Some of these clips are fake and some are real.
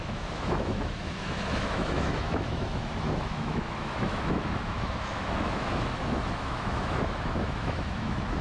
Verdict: fake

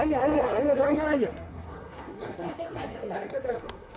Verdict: fake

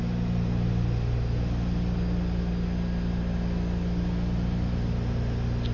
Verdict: real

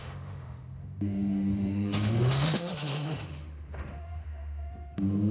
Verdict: fake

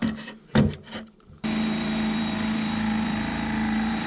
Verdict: fake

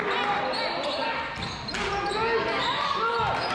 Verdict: real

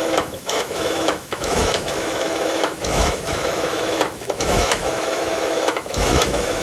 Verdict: fake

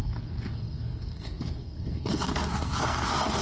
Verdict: fake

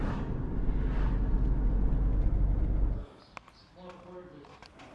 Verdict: real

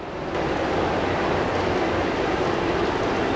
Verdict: real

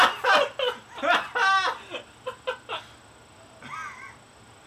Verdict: real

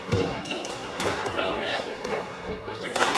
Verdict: fake